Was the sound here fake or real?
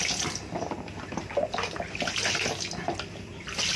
real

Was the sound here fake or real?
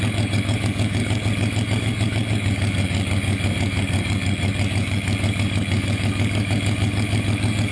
fake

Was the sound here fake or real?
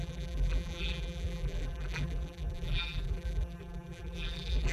fake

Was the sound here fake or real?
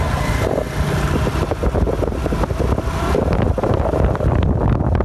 real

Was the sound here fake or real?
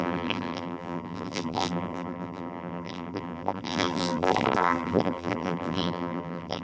fake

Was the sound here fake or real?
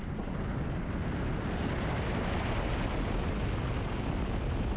real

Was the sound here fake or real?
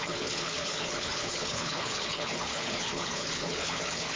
fake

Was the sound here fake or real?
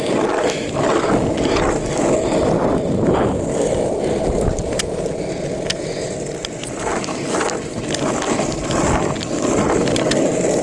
real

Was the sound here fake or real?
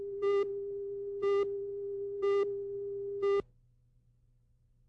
real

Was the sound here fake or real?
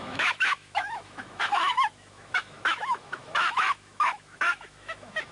fake